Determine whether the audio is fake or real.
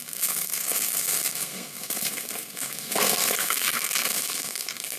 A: fake